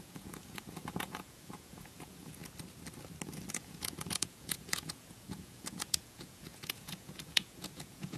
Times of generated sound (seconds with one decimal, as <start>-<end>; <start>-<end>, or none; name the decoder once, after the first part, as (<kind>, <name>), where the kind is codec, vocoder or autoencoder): 0.0-2.4 (vocoder, Vocos); 3.5-8.2